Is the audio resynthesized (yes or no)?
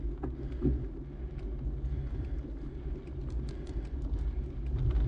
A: no